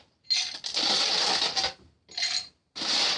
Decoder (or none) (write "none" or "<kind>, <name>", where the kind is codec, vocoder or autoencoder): none